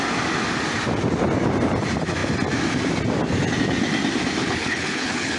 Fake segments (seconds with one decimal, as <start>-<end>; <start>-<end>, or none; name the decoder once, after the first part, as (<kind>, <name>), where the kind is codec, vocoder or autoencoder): 4.4-5.4 (codec, HILCodec)